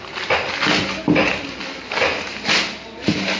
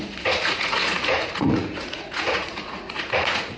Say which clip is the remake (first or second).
second